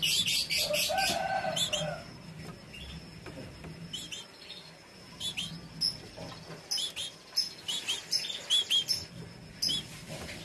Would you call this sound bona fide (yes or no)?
yes